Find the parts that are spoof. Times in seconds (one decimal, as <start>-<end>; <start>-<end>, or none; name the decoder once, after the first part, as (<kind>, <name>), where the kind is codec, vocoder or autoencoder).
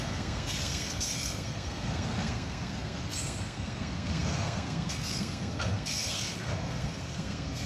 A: 0.0-7.7 (codec, SNAC)